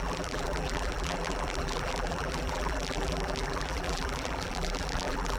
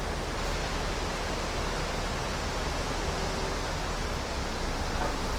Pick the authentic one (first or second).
second